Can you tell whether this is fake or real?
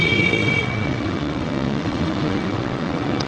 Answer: fake